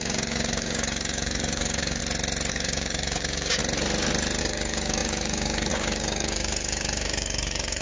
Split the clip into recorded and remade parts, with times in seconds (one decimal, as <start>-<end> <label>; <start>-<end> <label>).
0.0-2.0 remade; 2.0-2.5 recorded; 2.5-3.6 remade; 3.6-4.4 recorded; 4.4-7.8 remade

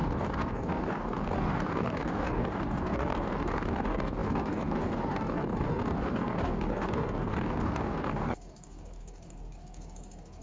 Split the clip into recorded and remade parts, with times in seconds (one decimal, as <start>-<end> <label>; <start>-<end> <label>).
0.0-10.4 remade